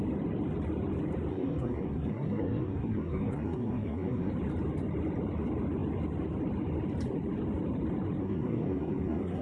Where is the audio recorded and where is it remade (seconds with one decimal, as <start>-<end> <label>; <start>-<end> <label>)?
0.0-1.3 recorded; 1.3-4.3 remade; 4.3-8.2 recorded; 8.2-9.4 remade